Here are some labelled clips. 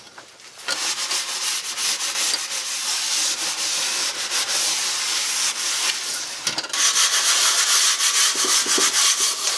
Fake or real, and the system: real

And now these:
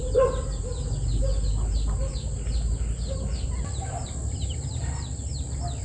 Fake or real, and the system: real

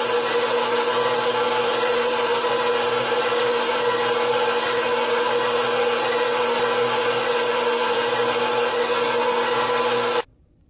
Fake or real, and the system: real